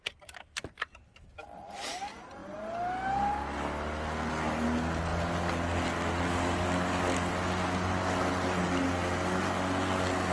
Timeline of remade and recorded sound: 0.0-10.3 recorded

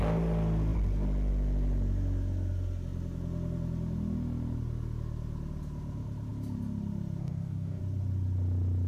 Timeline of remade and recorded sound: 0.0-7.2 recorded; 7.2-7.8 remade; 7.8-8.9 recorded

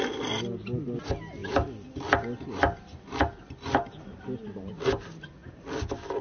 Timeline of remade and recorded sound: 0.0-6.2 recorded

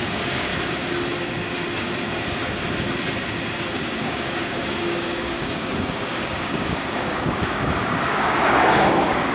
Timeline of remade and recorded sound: 0.0-0.5 remade; 0.5-3.7 recorded; 3.7-9.3 remade